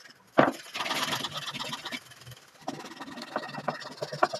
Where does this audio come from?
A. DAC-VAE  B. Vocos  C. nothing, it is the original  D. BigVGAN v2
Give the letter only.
C